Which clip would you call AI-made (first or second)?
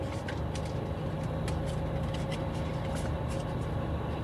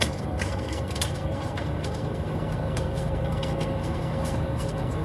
second